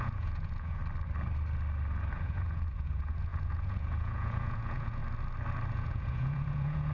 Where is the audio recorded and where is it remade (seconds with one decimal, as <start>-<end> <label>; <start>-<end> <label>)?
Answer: 0.0-0.8 remade; 0.8-2.1 recorded; 2.1-5.0 remade; 5.0-5.7 recorded; 5.7-6.9 remade